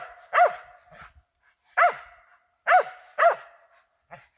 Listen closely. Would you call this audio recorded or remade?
recorded